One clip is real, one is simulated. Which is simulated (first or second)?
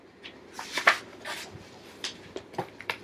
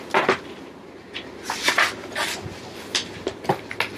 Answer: first